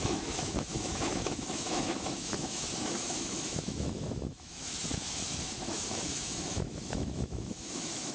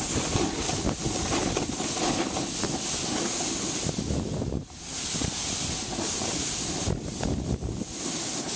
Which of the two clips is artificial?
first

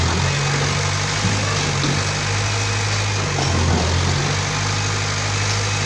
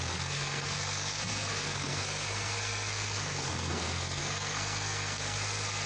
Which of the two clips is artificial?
second